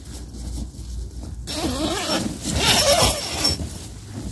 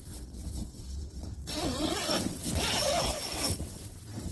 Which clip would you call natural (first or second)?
first